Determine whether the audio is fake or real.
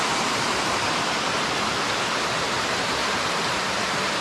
fake